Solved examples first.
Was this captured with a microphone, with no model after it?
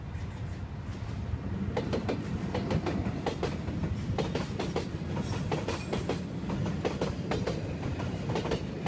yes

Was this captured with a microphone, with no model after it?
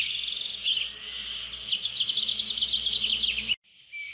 yes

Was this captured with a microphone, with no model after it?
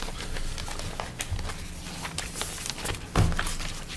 yes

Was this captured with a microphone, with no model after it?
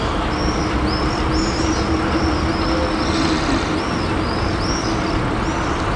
yes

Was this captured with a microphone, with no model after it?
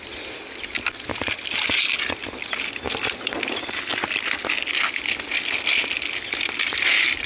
yes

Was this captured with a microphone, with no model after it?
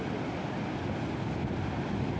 yes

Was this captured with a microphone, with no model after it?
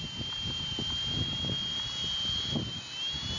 yes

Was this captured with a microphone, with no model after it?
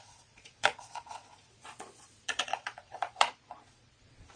no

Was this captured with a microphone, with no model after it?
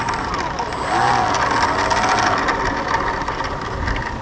yes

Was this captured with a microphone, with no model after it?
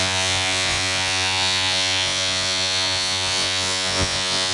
no